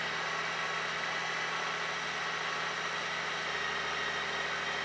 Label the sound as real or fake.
real